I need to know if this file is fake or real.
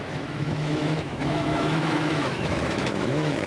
fake